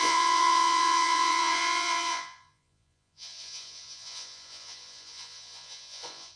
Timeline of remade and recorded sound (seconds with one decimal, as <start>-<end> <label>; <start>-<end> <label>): 0.0-6.4 remade